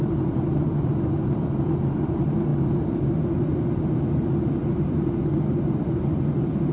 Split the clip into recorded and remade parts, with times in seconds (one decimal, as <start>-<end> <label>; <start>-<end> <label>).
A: 0.0-6.7 recorded